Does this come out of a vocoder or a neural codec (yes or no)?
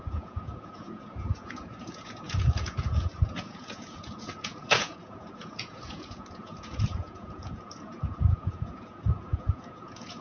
yes